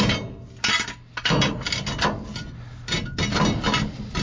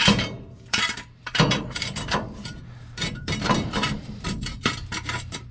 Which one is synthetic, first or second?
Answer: second